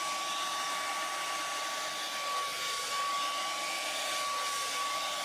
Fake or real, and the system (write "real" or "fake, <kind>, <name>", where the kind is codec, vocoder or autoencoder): real